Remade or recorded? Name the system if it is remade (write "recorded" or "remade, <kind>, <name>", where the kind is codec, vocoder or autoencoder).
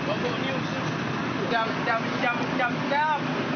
recorded